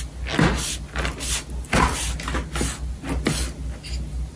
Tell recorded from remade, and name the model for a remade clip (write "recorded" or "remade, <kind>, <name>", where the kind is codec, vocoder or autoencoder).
recorded